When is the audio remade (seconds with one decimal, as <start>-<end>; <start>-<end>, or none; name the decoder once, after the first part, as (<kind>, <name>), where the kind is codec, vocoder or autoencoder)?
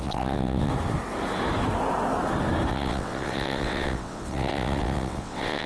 0.0-0.7 (vocoder, WaveNeXt); 2.7-5.7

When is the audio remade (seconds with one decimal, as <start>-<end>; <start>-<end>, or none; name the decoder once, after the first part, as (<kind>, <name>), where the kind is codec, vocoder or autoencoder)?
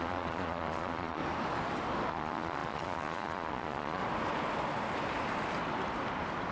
0.0-1.2 (vocoder, Vocos); 2.1-4.0